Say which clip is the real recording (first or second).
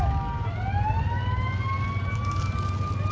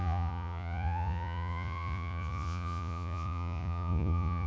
first